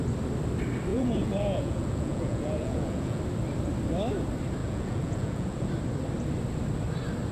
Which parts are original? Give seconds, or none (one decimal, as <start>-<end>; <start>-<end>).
0.0-0.9; 3.2-4.6; 5.7-7.3